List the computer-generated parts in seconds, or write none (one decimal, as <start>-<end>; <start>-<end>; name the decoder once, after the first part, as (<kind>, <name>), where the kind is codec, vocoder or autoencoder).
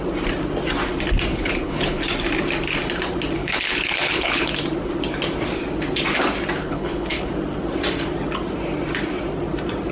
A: 1.3-2.0 (codec, HILCodec); 3.4-4.5; 6.6-7.3